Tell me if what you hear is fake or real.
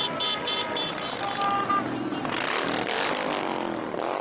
real